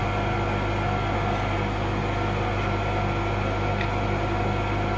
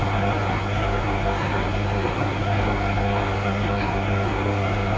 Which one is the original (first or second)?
first